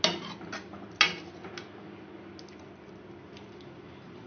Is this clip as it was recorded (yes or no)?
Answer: yes